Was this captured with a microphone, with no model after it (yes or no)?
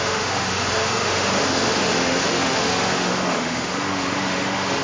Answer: no